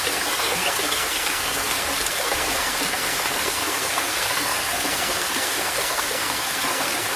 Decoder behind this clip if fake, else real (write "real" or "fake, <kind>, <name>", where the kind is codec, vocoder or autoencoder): fake, codec, SNAC